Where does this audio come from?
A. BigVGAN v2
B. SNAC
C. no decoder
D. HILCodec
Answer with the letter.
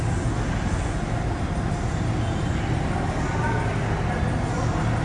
C